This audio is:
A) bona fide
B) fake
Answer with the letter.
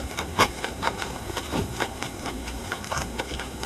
B